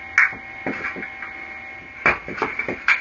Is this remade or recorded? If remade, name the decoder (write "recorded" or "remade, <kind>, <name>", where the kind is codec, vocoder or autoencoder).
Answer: recorded